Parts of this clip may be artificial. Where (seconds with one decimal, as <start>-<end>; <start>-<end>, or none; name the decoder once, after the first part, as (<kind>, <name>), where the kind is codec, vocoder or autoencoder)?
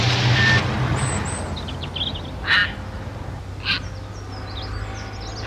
none